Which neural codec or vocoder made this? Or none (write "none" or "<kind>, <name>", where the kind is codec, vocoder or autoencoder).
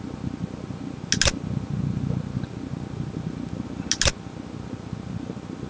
none